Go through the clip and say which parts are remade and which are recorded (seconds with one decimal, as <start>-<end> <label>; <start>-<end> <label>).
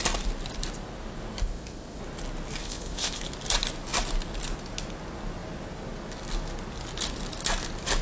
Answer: 0.0-1.4 recorded; 1.4-2.0 remade; 2.0-2.6 recorded; 2.6-3.2 remade; 3.2-8.0 recorded